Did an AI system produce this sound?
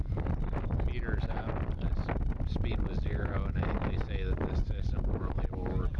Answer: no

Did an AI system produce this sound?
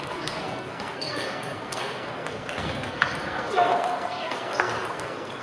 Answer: yes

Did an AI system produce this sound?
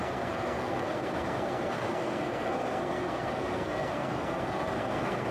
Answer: yes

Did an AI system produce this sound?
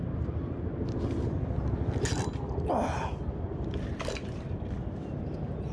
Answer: no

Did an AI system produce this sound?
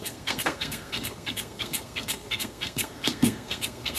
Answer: yes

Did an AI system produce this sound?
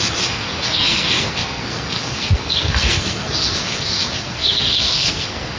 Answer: yes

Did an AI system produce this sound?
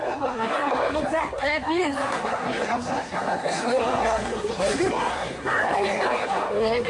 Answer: yes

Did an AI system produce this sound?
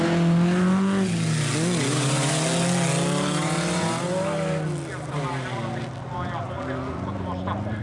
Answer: no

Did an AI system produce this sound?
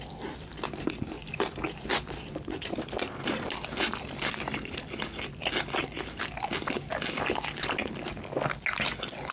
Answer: no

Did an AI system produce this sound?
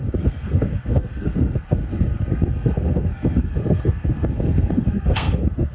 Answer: yes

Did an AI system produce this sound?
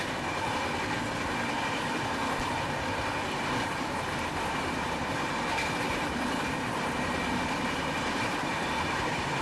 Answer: no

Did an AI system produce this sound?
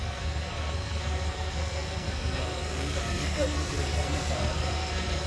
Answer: yes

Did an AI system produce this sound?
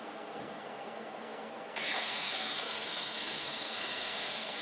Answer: yes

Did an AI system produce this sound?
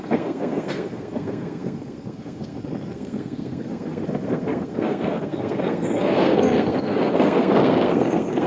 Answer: yes